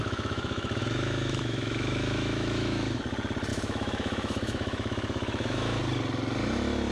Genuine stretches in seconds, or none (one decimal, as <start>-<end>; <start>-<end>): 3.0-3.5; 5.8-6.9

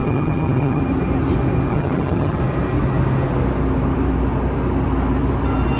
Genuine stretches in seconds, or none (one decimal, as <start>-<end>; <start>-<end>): 0.8-1.7; 2.4-5.8

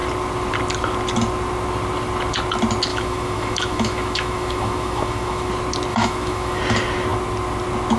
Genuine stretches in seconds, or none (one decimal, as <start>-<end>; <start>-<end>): 0.0-2.9; 5.5-5.9; 6.6-8.0